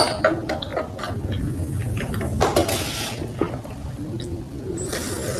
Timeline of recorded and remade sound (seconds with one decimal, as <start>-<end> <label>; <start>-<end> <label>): 0.0-0.7 remade; 0.7-3.5 recorded; 3.5-5.4 remade